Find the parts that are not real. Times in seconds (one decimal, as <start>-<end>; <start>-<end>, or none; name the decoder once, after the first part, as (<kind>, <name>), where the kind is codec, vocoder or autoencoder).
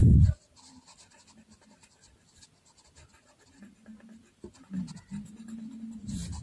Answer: none